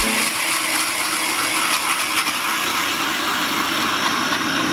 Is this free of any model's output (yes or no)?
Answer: yes